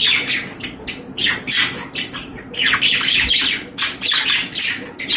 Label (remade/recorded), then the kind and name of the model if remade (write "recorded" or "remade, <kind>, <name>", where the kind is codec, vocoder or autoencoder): recorded